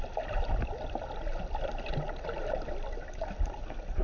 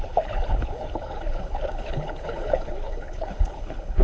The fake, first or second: second